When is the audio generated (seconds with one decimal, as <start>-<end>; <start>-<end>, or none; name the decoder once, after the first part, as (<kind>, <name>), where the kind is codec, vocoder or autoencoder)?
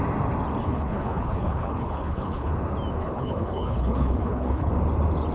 0.6-2.5 (codec, HILCodec); 3.0-4.7